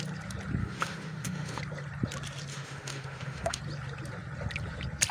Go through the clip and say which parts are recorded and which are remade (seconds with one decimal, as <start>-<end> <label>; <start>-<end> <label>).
0.0-0.6 recorded; 0.6-1.6 remade; 1.6-2.5 recorded; 2.5-3.6 remade; 3.6-5.1 recorded